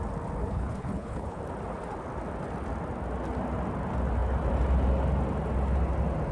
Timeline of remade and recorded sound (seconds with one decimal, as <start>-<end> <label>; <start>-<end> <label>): 0.0-0.4 recorded; 0.4-1.4 remade; 1.4-6.3 recorded